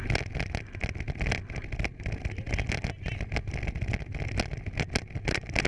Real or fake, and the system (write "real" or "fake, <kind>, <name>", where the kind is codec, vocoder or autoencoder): real